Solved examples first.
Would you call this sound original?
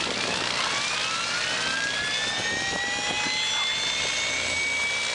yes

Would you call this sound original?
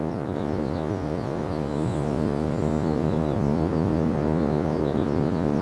no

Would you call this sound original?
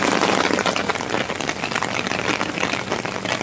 yes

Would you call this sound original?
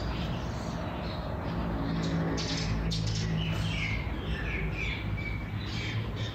yes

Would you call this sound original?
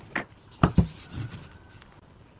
yes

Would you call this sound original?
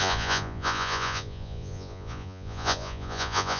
no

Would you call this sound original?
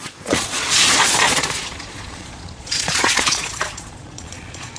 no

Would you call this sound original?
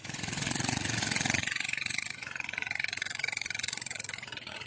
no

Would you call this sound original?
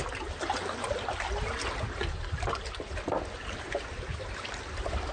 yes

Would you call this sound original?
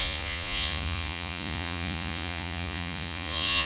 no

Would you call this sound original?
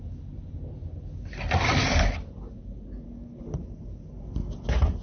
yes